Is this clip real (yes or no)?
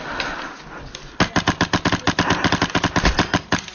yes